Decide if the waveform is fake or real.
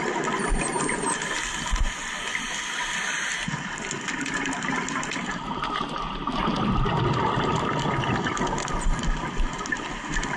real